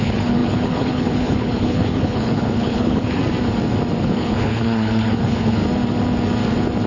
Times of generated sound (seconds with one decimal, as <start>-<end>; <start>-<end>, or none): 0.0-3.2; 4.0-5.6